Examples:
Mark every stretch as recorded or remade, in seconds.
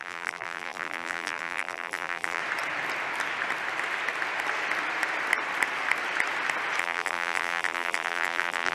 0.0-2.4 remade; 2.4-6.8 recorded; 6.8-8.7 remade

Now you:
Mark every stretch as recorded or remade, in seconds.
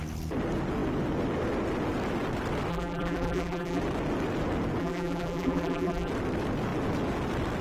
0.0-2.7 recorded; 2.7-3.8 remade; 3.8-4.8 recorded; 4.8-6.1 remade; 6.1-7.6 recorded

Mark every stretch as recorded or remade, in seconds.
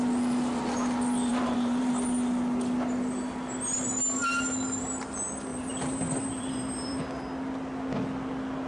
0.0-1.3 recorded; 1.3-1.9 remade; 1.9-5.5 recorded; 5.5-7.0 remade; 7.0-8.7 recorded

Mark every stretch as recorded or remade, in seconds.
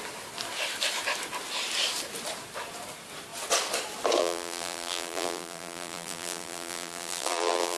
0.0-4.2 recorded; 4.2-7.8 remade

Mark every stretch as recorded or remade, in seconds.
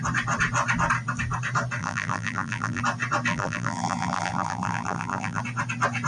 0.0-1.8 recorded; 1.8-2.8 remade; 2.8-3.3 recorded; 3.3-5.4 remade; 5.4-6.1 recorded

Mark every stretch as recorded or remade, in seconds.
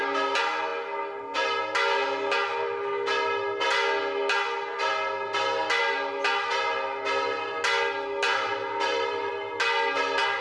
0.0-8.3 recorded; 8.3-9.3 remade; 9.3-10.4 recorded